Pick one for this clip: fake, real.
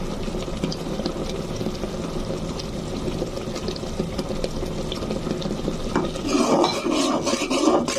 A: real